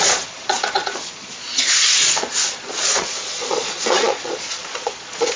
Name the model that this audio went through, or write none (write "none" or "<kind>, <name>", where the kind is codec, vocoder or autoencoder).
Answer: vocoder, Vocos